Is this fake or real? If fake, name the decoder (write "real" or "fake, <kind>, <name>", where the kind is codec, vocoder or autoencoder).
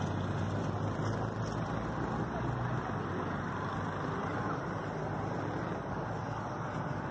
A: real